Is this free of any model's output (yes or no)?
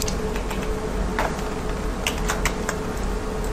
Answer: yes